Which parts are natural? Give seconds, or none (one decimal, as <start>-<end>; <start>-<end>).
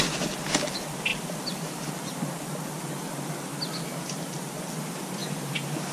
0.0-5.2